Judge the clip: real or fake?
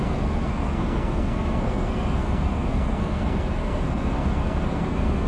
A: fake